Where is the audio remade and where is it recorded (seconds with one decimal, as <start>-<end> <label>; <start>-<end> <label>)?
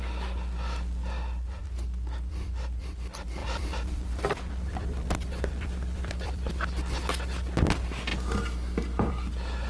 0.0-3.4 recorded; 3.4-6.5 remade; 6.5-9.7 recorded